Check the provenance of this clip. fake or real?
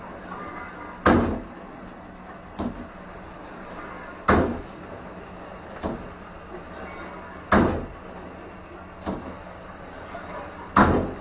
real